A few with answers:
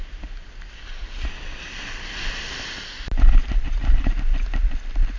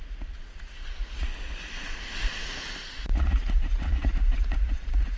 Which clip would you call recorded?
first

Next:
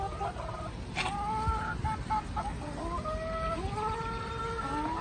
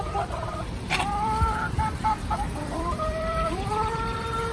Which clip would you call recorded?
first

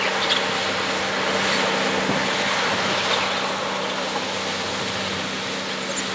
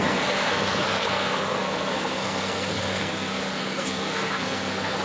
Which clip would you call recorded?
first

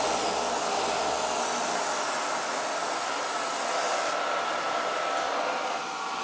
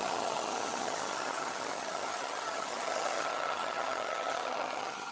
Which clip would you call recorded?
first